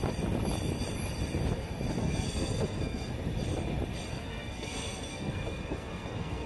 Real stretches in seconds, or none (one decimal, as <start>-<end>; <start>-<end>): 0.0-2.0; 3.1-4.1